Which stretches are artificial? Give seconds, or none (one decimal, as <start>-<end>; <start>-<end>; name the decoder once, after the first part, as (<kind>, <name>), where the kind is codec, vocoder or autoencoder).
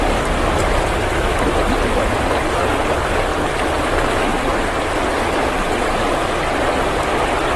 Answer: none